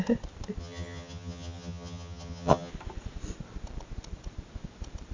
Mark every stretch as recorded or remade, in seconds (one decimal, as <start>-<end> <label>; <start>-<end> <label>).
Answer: 0.0-0.6 recorded; 0.6-2.7 remade; 2.7-5.1 recorded